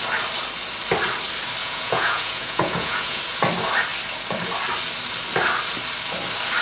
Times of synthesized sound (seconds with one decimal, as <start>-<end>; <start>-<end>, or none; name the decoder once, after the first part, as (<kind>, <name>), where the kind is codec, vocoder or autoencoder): 1.6-3.2 (vocoder, Vocos)